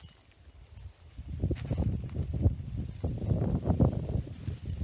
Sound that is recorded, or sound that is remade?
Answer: recorded